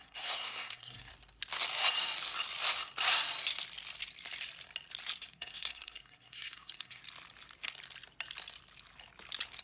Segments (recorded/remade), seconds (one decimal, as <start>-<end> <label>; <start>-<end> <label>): 0.0-1.1 remade; 1.1-5.2 recorded; 5.2-7.0 remade; 7.0-9.6 recorded